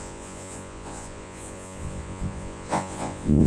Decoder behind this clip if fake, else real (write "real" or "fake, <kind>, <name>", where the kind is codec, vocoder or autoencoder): fake, vocoder, Vocos